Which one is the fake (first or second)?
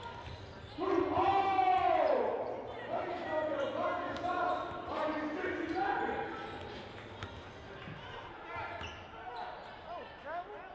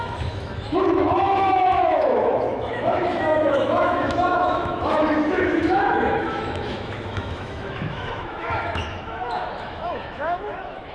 second